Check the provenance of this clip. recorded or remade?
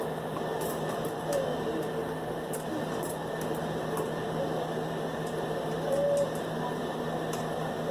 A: recorded